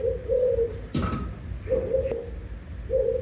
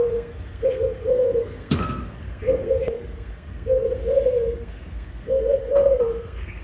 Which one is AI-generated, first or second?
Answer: second